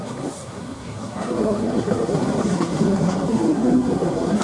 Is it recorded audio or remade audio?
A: remade